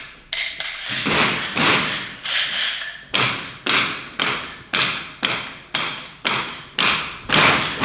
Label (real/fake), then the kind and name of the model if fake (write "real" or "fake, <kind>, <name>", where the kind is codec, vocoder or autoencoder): real